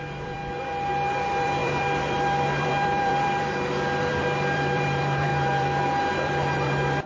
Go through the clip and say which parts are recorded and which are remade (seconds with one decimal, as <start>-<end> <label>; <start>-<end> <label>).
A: 0.0-0.4 remade; 0.4-1.1 recorded; 1.1-7.1 remade